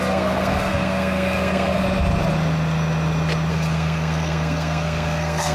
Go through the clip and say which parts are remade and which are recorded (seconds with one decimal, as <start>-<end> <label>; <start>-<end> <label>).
0.0-1.8 remade; 1.8-3.5 recorded; 3.5-5.5 remade